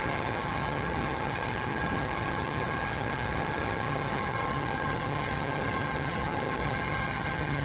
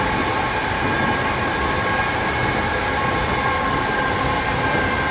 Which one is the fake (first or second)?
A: first